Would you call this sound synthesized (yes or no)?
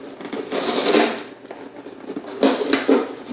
no